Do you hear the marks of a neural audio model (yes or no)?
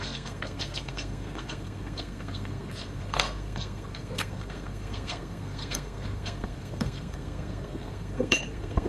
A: yes